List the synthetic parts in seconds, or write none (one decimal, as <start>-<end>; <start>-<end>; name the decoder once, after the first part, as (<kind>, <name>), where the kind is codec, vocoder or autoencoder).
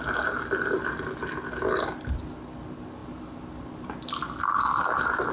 none